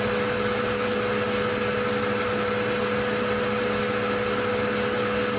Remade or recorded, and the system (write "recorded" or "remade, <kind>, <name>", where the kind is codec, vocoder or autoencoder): recorded